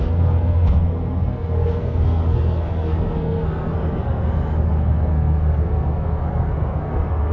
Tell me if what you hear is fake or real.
fake